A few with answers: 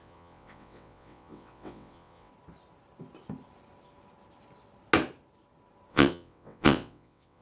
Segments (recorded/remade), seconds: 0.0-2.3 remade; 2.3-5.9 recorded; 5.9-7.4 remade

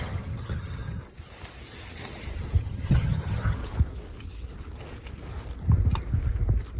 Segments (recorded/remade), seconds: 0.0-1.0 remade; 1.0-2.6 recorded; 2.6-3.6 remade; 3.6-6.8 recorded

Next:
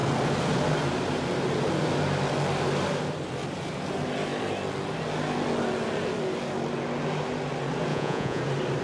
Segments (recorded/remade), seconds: 0.0-7.9 recorded; 7.9-8.4 remade; 8.4-8.8 recorded

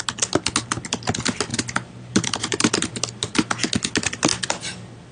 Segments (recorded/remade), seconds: 0.0-1.5 recorded; 1.5-2.7 remade; 2.7-5.1 recorded

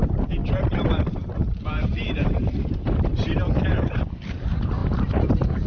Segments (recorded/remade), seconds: 0.0-0.4 recorded; 0.4-3.8 remade; 3.8-4.8 recorded; 4.8-5.7 remade